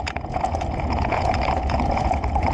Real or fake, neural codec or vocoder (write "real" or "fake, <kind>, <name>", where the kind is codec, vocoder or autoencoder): fake, vocoder, Vocos